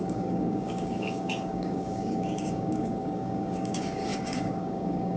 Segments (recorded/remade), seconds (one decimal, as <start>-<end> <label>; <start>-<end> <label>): 0.0-5.2 remade